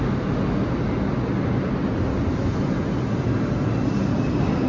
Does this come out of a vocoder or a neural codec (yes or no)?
no